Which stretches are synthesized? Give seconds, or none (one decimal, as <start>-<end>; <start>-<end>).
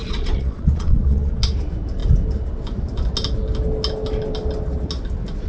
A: 0.0-1.3